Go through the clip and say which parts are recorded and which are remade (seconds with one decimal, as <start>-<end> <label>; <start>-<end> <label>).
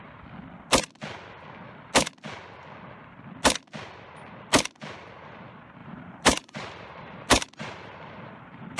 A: 0.0-5.8 recorded; 5.8-8.8 remade